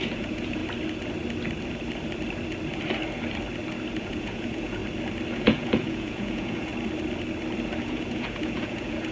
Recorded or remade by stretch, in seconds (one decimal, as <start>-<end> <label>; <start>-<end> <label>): 0.0-0.6 remade; 0.6-4.0 recorded; 4.0-4.8 remade; 4.8-5.3 recorded; 5.3-6.7 remade; 6.7-7.8 recorded; 7.8-9.1 remade